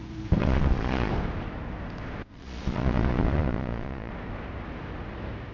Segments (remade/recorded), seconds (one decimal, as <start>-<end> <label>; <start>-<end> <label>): 0.0-0.4 recorded; 0.4-1.1 remade; 1.1-2.3 recorded; 2.3-4.1 remade; 4.1-5.5 recorded